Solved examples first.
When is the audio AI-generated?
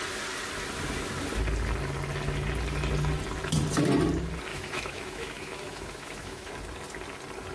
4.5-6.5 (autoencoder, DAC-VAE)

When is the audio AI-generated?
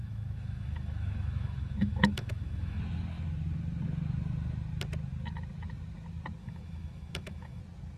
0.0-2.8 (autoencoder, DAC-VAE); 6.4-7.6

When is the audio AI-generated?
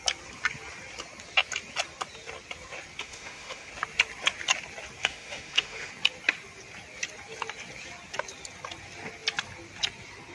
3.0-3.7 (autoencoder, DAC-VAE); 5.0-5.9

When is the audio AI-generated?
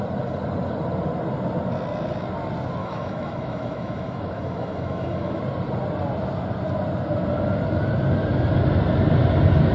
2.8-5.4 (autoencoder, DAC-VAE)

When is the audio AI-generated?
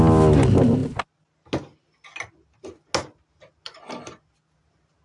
none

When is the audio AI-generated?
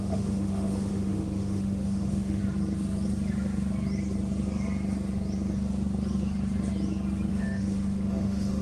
0.0-2.4 (autoencoder, DAC-VAE); 7.3-8.6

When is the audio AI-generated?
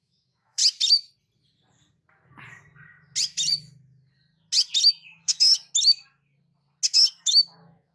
0.0-0.6 (autoencoder, DAC-VAE); 4.9-5.5; 7.3-7.9